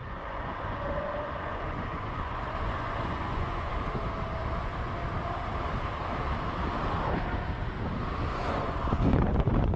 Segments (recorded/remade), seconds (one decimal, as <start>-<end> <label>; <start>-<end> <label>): 0.0-3.7 remade; 3.7-4.5 recorded; 4.5-5.0 remade; 5.0-8.3 recorded; 8.3-9.8 remade